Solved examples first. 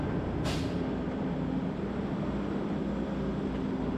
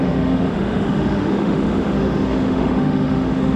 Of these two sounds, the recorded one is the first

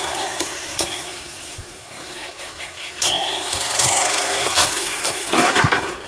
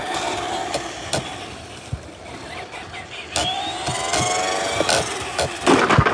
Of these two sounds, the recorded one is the second